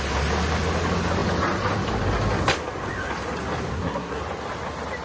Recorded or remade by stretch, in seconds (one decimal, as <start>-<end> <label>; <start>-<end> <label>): 0.0-3.7 recorded; 3.7-4.2 remade; 4.2-5.0 recorded